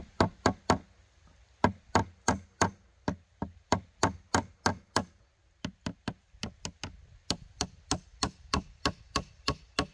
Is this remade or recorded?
recorded